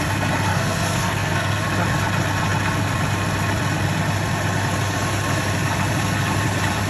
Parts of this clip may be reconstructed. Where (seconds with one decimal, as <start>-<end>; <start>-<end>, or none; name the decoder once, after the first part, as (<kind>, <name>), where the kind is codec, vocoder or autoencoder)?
0.5-1.6 (codec, SNAC)